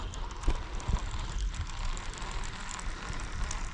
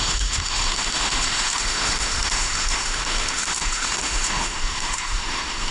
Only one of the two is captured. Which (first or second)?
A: first